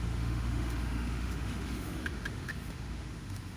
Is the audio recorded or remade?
remade